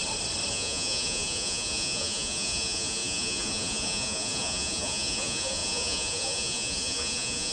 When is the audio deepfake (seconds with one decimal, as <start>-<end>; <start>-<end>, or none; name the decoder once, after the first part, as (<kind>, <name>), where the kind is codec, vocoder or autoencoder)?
0.5-7.5 (vocoder, Vocos)